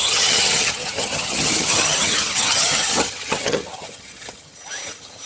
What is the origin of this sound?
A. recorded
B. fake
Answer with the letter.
B